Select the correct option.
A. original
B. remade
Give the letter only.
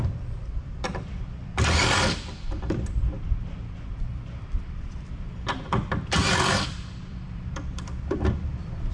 B